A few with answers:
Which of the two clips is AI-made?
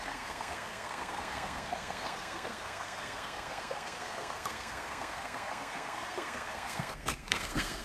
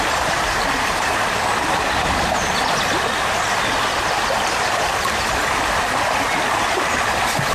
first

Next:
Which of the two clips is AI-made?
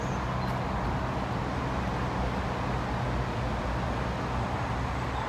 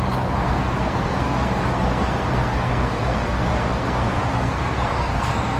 second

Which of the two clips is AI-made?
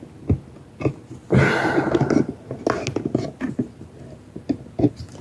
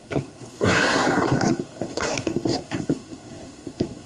second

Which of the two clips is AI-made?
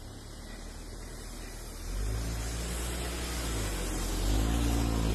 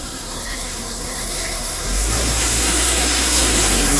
second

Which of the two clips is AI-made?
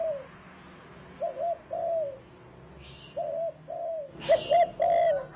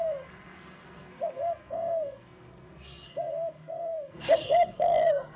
second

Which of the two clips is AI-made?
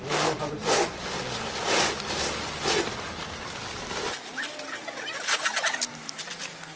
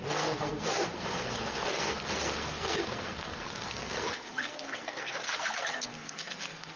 second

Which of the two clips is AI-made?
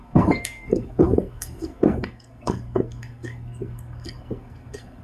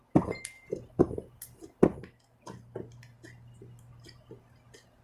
first